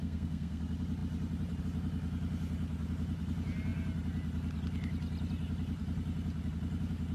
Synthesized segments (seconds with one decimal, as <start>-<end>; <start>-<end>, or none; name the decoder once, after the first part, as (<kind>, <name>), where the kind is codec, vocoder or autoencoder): 0.0-0.6 (codec, SNAC)